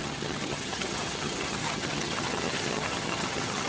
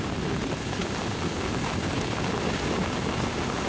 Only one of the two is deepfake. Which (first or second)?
first